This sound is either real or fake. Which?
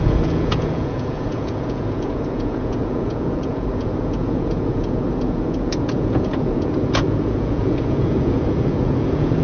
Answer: fake